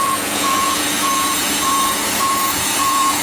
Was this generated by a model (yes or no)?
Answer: yes